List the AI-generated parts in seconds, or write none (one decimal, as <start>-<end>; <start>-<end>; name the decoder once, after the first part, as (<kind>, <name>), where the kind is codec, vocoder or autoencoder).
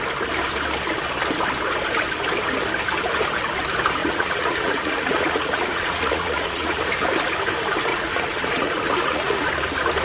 4.0-6.8 (vocoder, Vocos); 7.9-9.5